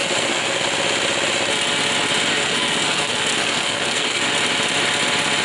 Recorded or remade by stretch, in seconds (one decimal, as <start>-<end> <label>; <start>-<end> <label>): 0.0-0.6 remade; 0.6-2.3 recorded; 2.3-4.2 remade; 4.2-5.4 recorded